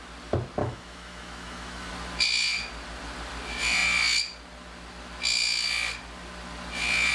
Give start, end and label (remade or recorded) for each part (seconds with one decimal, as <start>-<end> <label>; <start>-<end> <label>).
0.0-0.6 recorded; 0.6-1.9 remade; 1.9-7.1 recorded

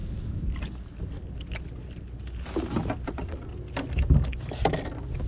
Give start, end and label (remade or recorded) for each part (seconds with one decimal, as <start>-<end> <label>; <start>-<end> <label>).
0.0-3.1 recorded; 3.1-3.5 remade; 3.5-5.3 recorded

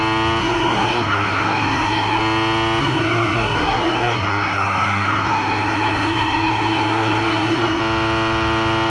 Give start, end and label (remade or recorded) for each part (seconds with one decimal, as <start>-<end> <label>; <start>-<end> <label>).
0.0-0.4 recorded; 0.4-2.2 remade; 2.2-2.8 recorded; 2.8-7.8 remade; 7.8-8.9 recorded